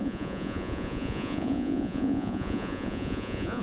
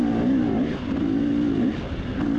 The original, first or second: second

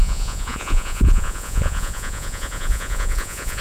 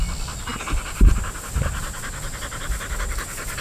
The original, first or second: second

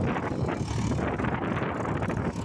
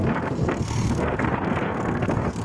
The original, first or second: first